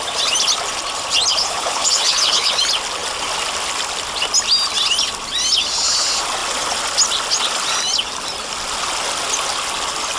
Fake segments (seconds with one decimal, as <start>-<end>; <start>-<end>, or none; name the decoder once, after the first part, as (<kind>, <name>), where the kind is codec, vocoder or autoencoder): 1.3-2.5 (codec, HILCodec)